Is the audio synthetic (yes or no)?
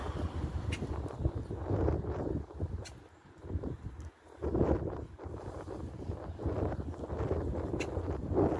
no